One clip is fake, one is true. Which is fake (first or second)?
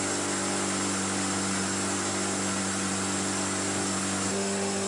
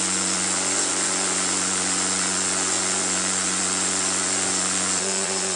second